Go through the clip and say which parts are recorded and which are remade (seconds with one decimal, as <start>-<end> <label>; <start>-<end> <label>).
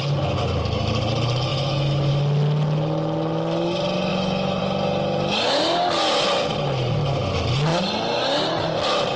0.0-1.5 recorded; 1.5-2.1 remade; 2.1-4.1 recorded; 4.1-4.6 remade; 4.6-9.2 recorded